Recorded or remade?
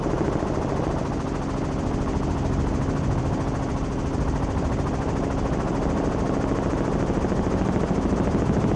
recorded